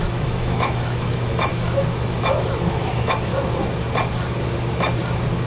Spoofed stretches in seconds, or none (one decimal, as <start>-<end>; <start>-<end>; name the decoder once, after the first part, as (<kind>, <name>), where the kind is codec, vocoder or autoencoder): 0.0-3.3 (autoencoder, DAC-VAE)